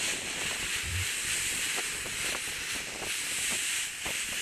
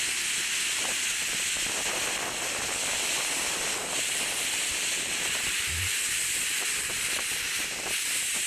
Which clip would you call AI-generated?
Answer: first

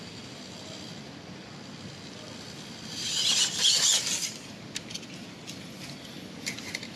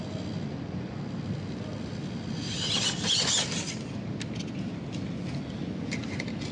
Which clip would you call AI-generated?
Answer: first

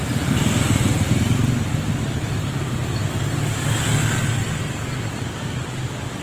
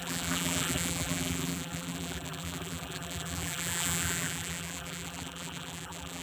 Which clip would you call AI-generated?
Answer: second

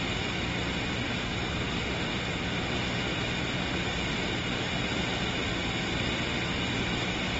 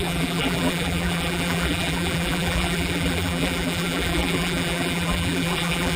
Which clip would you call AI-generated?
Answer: second